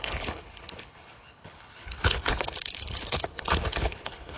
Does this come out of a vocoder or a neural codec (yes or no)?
yes